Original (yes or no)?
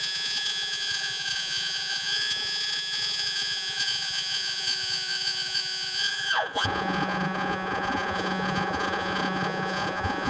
no